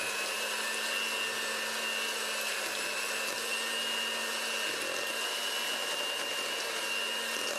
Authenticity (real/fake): real